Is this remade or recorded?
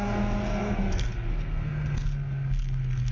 remade